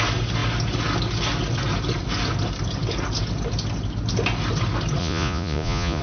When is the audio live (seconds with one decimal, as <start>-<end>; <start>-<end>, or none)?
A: 0.0-5.0